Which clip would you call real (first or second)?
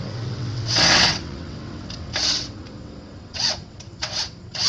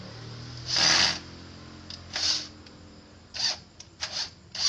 second